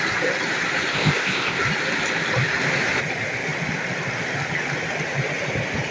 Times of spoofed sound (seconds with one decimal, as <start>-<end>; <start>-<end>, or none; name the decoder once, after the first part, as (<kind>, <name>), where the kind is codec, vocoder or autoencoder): 0.9-1.6 (codec, ZipCodec)